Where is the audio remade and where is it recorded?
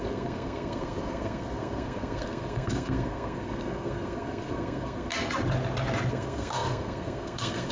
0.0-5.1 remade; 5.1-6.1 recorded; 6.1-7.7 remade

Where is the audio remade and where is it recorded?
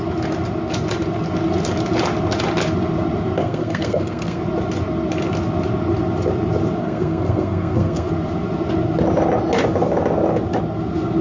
0.0-3.4 recorded; 3.4-4.4 remade; 4.4-6.8 recorded; 6.8-8.1 remade; 8.1-11.2 recorded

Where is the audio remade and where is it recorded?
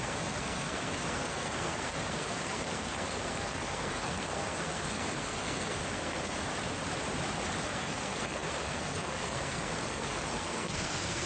0.0-6.5 remade; 6.5-7.6 recorded; 7.6-11.3 remade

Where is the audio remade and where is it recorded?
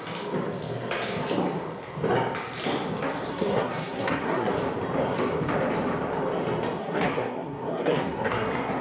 0.0-3.3 recorded; 3.3-4.5 remade; 4.5-6.8 recorded; 6.8-8.8 remade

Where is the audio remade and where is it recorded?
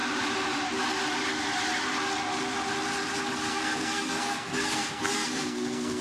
0.0-3.5 recorded; 3.5-6.0 remade